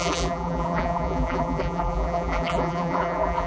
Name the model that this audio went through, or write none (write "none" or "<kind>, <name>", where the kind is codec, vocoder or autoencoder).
vocoder, BigVGAN v2